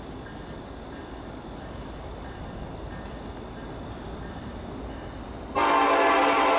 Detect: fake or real real